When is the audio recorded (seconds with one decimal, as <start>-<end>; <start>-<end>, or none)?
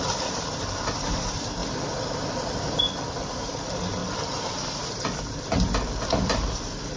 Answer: 1.6-2.8; 4.0-4.9